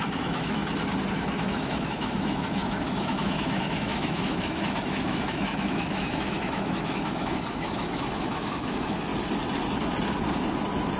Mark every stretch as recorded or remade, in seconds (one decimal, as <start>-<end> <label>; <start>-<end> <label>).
0.0-0.6 remade; 0.6-1.1 recorded; 1.1-9.1 remade; 9.1-11.0 recorded